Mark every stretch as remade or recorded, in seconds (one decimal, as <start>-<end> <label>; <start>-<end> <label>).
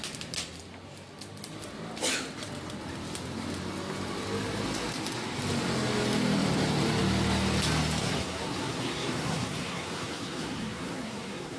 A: 0.0-8.0 recorded; 8.0-11.6 remade